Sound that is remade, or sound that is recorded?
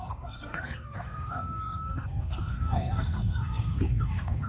remade